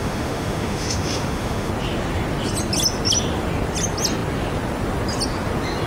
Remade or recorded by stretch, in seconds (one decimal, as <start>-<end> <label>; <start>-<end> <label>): 0.0-1.7 remade; 1.7-5.9 recorded